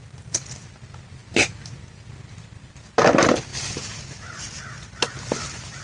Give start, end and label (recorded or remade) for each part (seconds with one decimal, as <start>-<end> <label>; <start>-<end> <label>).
0.0-5.8 recorded